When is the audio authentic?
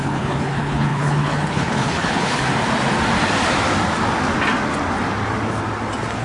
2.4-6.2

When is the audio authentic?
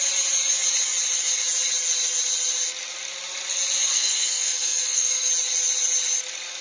0.0-3.9; 5.3-6.6